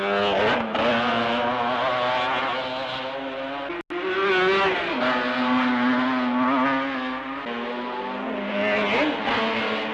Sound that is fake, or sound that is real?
real